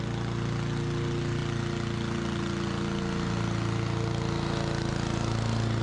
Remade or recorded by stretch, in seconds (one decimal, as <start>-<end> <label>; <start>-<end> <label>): 0.0-5.8 recorded